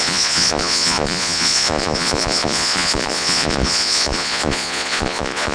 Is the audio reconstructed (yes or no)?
yes